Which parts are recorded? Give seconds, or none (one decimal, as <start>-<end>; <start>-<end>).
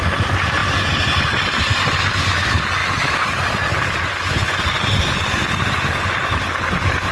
0.0-7.1